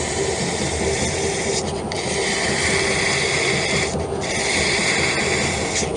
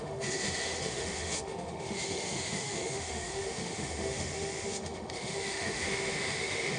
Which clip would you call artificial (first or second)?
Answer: second